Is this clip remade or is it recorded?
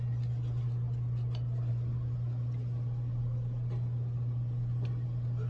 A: recorded